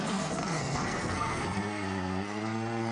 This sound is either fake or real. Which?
fake